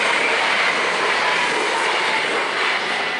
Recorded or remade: recorded